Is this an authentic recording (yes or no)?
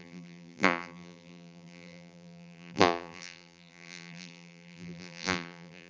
no